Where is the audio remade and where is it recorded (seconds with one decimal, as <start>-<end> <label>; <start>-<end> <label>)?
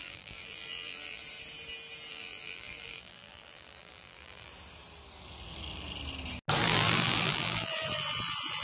0.0-1.2 remade; 1.2-2.1 recorded; 2.1-4.5 remade; 4.5-6.6 recorded; 6.6-8.6 remade